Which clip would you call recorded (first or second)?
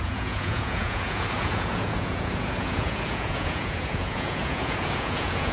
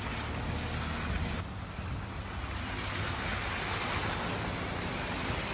second